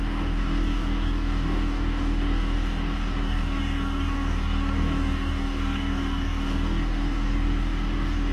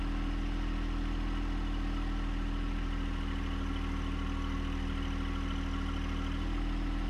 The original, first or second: second